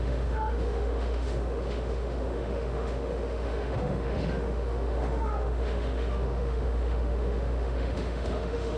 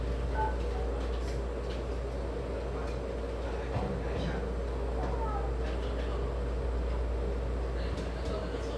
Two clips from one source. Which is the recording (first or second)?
second